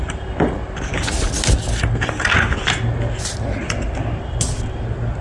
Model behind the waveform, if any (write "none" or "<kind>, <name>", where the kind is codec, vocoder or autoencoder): none